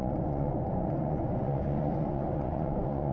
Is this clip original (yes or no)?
no